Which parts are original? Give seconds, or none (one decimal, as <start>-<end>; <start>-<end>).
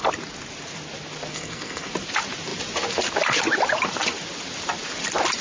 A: 0.0-1.3; 1.9-5.4